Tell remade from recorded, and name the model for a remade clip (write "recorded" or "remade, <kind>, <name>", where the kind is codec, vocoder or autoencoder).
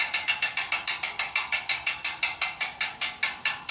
recorded